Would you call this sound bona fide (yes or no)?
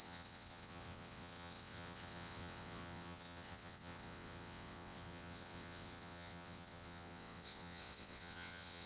no